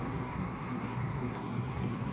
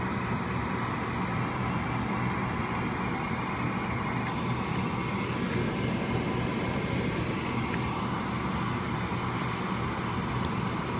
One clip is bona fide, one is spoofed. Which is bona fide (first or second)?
second